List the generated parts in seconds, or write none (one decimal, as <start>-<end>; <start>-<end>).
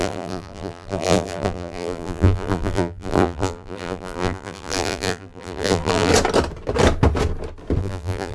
0.0-6.1; 7.8-8.3